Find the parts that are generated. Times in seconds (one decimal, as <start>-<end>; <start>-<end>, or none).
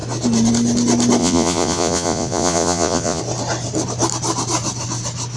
1.2-3.2